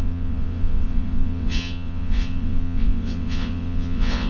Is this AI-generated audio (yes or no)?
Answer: yes